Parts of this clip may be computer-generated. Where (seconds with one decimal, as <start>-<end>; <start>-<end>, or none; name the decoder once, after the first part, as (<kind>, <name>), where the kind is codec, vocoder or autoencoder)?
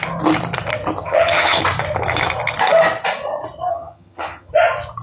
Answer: 1.0-1.6 (vocoder, HiFi-GAN); 3.7-4.5